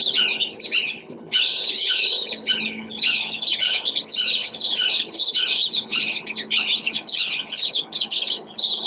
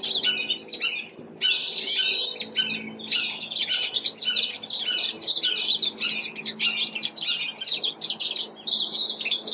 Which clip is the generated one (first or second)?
first